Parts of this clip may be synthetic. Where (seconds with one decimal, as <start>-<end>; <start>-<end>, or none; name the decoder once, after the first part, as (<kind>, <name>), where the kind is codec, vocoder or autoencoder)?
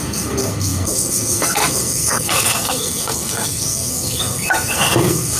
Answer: 0.0-5.4 (codec, SNAC)